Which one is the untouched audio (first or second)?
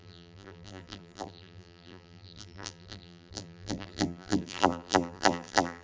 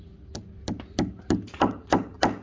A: second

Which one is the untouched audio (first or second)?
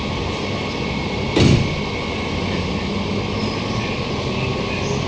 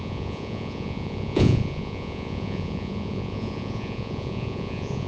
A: first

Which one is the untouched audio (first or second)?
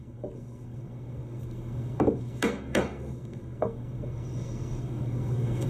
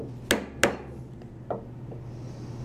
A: second